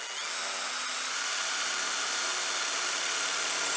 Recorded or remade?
recorded